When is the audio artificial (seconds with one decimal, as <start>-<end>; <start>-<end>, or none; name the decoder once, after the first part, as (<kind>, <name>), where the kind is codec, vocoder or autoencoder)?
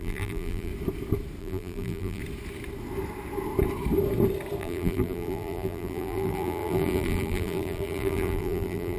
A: 0.0-0.7 (vocoder, BigVGAN v2); 1.4-2.2; 4.6-9.0